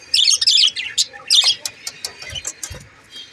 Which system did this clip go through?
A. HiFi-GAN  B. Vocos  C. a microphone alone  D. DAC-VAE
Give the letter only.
C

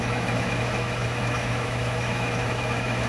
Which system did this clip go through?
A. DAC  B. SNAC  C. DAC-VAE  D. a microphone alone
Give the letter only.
C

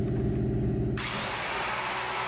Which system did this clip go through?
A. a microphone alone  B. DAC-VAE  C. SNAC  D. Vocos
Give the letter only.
A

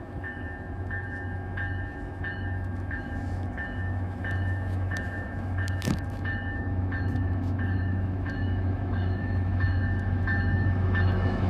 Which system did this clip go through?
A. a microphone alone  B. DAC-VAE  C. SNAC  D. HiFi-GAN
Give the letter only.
B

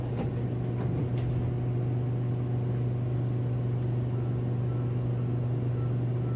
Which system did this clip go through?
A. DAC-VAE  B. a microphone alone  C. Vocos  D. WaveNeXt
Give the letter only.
B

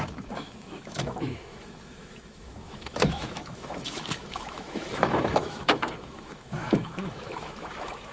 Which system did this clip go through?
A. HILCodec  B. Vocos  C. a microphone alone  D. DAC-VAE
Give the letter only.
D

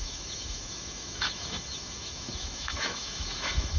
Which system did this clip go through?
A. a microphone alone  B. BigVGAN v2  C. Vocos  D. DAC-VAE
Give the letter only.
D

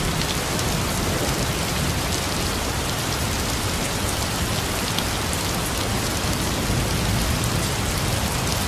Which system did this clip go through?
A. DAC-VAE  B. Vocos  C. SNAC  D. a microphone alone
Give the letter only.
D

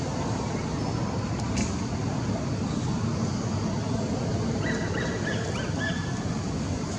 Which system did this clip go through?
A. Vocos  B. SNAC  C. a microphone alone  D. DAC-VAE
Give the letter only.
C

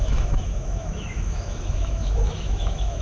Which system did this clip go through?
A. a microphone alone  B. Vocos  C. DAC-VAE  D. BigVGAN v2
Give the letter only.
C